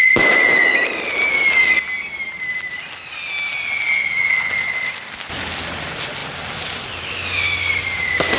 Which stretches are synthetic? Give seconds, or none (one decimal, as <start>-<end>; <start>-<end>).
none

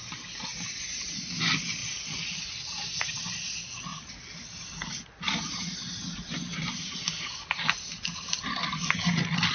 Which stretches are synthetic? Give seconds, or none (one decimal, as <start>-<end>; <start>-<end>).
none